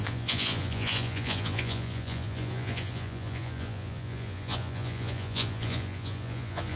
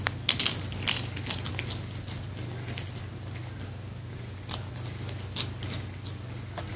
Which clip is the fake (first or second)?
first